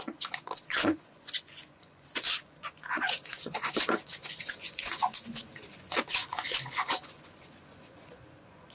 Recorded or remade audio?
remade